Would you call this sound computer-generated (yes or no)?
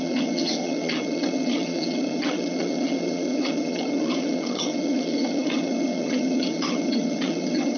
yes